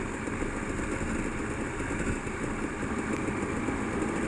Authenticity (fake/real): real